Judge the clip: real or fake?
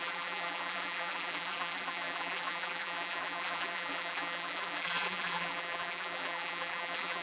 fake